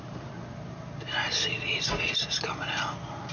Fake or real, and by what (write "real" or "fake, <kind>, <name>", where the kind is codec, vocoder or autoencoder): real